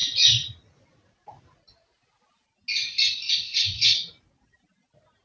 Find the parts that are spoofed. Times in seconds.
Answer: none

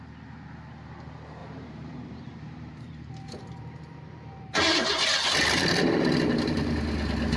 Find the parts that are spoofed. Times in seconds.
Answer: 1.4-5.8 (vocoder, BigVGAN v2)

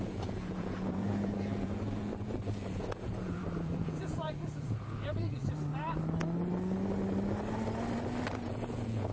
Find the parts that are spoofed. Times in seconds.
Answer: 0.0-5.4 (vocoder, Vocos); 8.3-9.1